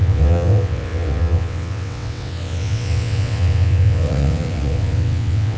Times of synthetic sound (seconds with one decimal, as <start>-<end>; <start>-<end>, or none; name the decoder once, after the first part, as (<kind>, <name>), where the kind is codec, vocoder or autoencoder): 0.0-5.6 (vocoder, WaveNeXt)